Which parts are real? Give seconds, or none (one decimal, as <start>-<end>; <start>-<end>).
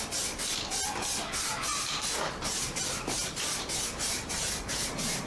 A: 0.0-1.7